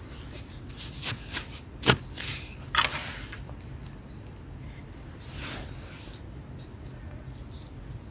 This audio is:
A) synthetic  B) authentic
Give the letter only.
B